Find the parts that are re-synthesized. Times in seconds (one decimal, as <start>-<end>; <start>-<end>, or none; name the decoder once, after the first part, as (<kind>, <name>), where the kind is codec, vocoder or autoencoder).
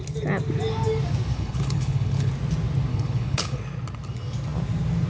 1.3-2.3 (codec, HILCodec); 2.9-3.6